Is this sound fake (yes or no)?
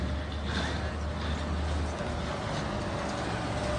no